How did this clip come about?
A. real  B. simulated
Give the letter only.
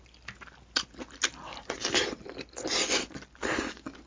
A